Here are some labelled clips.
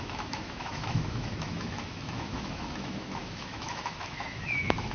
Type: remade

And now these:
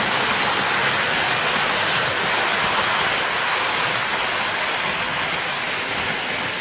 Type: recorded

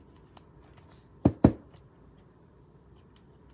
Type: recorded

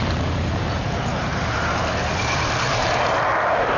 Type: remade